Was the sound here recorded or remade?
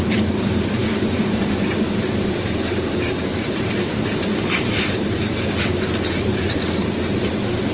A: remade